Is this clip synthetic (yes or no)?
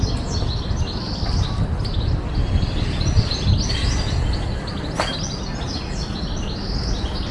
no